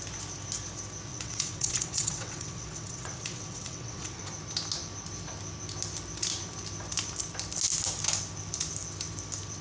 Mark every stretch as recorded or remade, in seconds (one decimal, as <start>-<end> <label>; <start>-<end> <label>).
0.0-1.1 recorded; 1.1-4.2 remade; 4.2-9.6 recorded